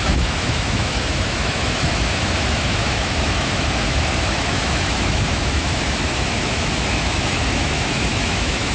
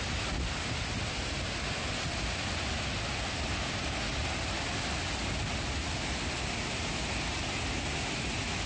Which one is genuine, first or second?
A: second